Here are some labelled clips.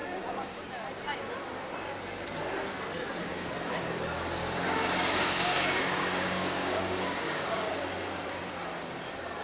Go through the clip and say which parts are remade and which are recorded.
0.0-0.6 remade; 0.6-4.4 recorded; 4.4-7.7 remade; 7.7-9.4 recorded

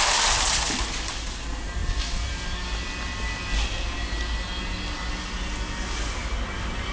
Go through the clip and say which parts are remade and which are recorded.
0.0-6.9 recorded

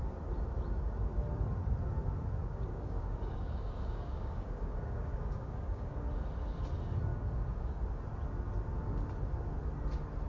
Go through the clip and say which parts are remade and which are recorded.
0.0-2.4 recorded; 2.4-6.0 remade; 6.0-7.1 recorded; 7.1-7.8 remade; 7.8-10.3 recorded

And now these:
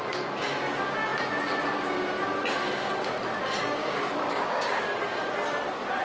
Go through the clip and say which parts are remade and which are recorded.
0.0-3.8 recorded; 3.8-4.8 remade; 4.8-6.0 recorded

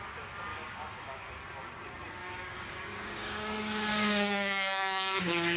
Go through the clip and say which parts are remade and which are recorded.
0.0-0.5 recorded; 0.5-1.3 remade; 1.3-2.2 recorded; 2.2-5.6 remade

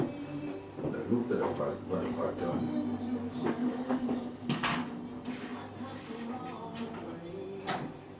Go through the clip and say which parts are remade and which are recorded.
0.0-1.2 recorded; 1.2-2.6 remade; 2.6-3.6 recorded; 3.6-5.0 remade; 5.0-8.2 recorded